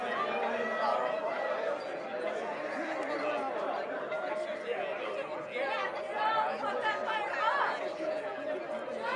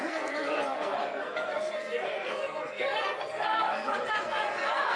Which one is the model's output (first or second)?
second